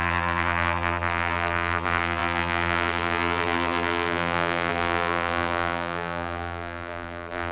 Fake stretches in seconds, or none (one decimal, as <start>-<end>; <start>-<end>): 0.0-7.5